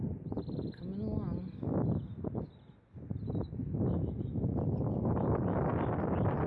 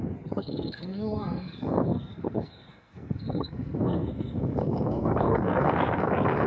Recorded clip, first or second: first